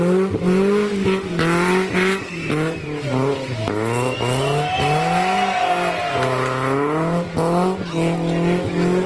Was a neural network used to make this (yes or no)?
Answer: no